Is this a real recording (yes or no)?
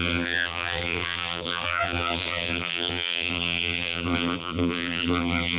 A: no